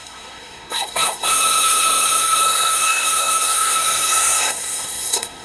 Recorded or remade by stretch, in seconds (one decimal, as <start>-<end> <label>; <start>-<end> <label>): 0.0-5.4 remade